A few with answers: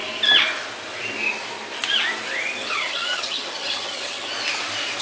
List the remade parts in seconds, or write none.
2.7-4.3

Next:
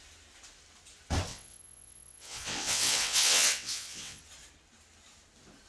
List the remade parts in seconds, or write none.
1.3-4.2